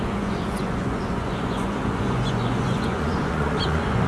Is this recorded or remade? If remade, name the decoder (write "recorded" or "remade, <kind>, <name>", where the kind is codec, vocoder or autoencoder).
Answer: remade, vocoder, Vocos